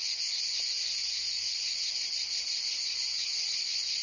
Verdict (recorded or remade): recorded